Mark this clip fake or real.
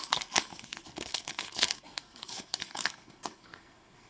fake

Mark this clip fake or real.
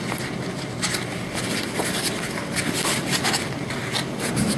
real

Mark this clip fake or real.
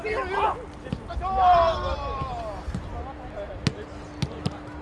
real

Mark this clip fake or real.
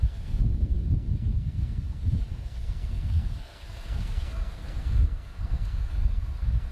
fake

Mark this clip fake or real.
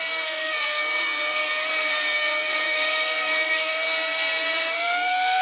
fake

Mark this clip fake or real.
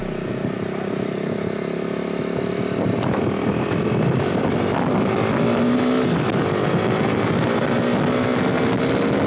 real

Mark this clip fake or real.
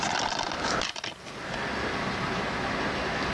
real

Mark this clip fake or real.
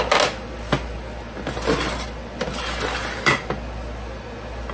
real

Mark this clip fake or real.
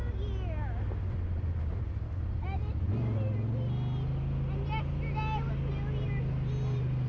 real